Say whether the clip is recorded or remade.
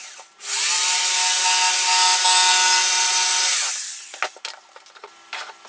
recorded